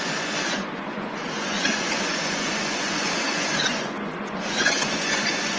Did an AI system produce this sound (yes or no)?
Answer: yes